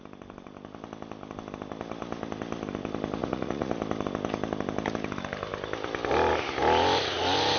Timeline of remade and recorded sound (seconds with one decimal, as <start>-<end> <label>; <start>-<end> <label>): 0.0-3.2 recorded; 3.2-3.7 remade; 3.7-7.6 recorded